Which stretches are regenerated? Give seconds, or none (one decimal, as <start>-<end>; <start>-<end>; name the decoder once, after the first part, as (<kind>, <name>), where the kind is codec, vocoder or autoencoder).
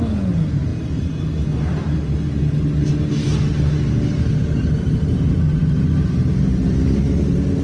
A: none